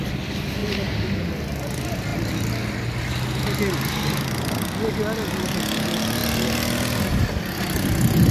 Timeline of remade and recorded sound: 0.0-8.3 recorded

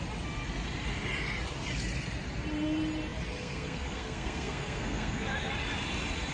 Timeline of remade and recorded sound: 0.0-3.4 recorded; 3.4-5.5 remade; 5.5-6.3 recorded

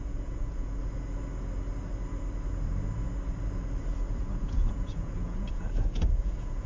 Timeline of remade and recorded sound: 0.0-0.8 remade; 0.8-4.2 recorded; 4.2-6.7 remade

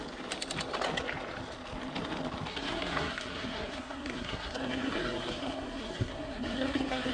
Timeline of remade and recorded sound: 0.0-2.5 recorded; 2.5-7.1 remade

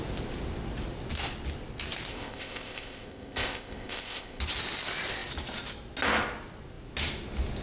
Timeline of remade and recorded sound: 0.0-2.1 recorded; 2.1-4.4 remade; 4.4-7.6 recorded